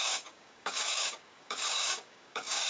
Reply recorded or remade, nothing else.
remade